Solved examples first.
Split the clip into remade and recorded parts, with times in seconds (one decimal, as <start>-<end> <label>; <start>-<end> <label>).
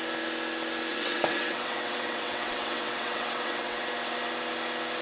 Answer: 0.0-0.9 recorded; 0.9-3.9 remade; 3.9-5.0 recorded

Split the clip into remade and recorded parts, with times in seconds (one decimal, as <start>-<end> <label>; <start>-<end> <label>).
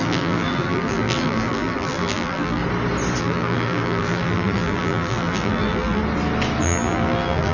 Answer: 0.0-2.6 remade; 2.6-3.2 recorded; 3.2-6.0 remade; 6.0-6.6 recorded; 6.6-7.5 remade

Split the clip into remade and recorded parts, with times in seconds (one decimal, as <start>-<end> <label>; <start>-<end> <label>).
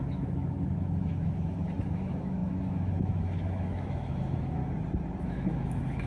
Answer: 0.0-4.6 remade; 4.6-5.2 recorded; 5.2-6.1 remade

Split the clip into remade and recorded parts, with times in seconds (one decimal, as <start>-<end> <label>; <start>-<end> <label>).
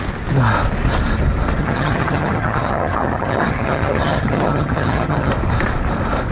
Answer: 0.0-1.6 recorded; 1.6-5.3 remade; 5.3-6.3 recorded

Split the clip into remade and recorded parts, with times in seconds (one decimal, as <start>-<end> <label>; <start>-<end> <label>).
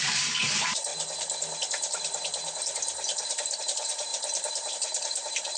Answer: 0.0-0.9 remade; 0.9-3.6 recorded; 3.6-4.1 remade; 4.1-4.7 recorded; 4.7-5.6 remade